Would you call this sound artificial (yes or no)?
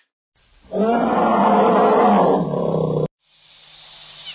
no